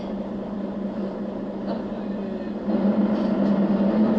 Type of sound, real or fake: real